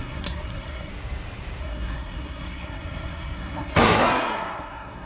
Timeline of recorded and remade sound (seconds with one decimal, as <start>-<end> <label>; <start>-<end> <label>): 0.0-0.9 remade; 0.9-1.6 recorded; 1.6-5.1 remade